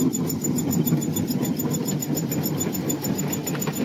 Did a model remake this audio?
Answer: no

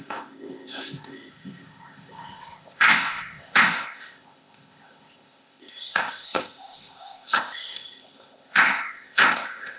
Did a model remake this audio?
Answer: yes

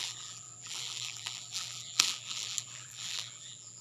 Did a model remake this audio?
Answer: yes